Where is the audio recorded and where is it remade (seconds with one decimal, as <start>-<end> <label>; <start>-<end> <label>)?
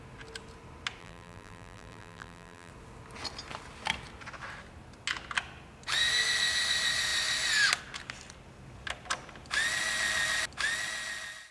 0.0-1.0 recorded; 1.0-2.7 remade; 2.7-11.5 recorded